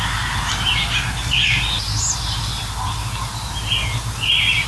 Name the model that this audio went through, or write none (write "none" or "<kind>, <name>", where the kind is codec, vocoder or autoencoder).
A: none